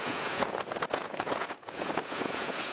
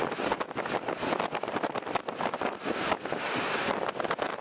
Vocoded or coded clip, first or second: first